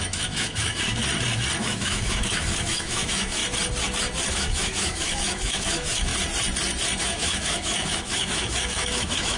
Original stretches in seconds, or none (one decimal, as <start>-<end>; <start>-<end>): 1.0-1.6; 3.4-4.3; 6.1-7.0